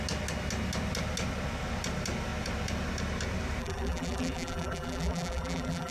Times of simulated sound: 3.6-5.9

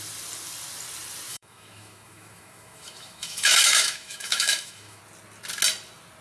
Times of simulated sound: 1.3-5.0